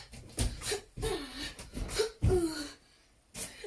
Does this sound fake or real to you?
real